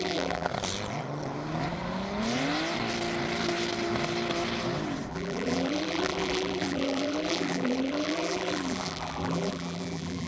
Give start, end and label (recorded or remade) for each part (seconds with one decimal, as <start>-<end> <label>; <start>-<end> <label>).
0.0-0.5 remade; 0.5-5.1 recorded; 5.1-10.3 remade